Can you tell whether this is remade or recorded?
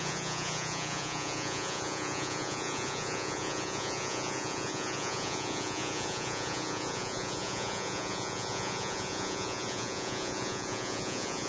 remade